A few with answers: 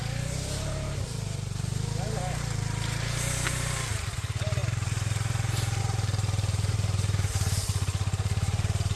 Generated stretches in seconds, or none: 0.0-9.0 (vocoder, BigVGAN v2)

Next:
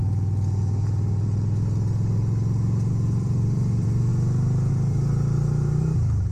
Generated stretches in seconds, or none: 2.9-4.1 (vocoder, BigVGAN v2); 4.7-6.3